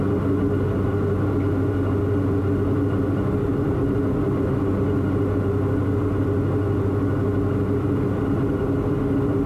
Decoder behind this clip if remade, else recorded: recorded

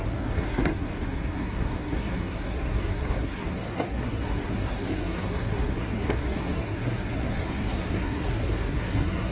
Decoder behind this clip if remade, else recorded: remade, codec, SNAC